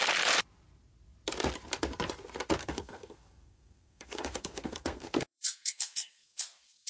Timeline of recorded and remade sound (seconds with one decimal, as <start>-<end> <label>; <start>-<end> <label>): 0.0-2.6 recorded; 2.6-6.9 remade